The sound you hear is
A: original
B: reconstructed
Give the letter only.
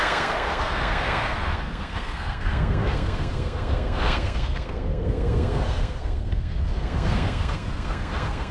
B